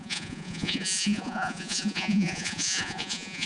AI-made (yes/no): yes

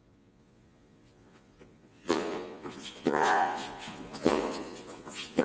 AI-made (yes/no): yes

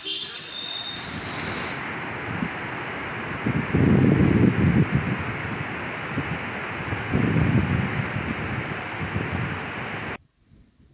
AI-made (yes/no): no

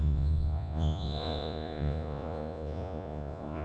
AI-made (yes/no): yes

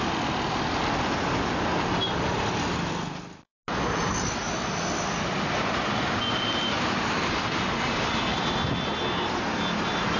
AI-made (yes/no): no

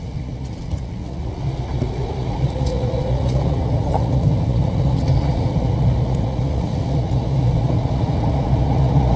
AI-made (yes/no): yes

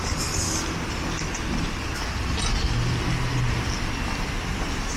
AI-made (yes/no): no